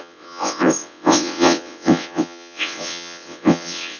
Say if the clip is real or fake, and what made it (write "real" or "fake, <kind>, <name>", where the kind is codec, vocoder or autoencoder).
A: fake, vocoder, WaveNeXt